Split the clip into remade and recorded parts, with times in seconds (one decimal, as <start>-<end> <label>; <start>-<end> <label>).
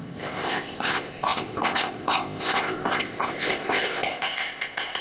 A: 0.0-5.0 remade